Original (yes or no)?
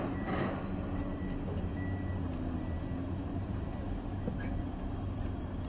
yes